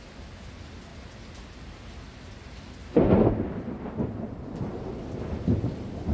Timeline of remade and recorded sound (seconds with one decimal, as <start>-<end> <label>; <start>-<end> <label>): 0.0-6.1 recorded